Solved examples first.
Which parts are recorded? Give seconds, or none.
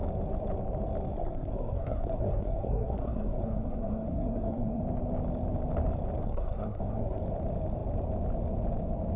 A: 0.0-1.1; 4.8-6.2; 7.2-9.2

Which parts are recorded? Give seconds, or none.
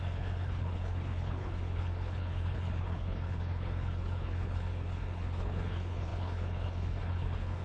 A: none